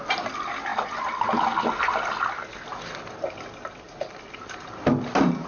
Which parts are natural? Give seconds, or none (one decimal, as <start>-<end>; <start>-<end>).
0.0-5.5